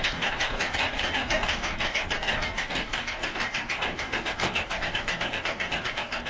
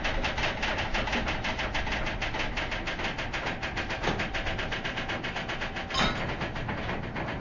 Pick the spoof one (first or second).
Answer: first